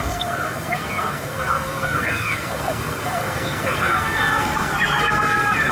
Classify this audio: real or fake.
fake